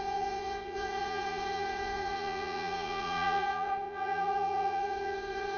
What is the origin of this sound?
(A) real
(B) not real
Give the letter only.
B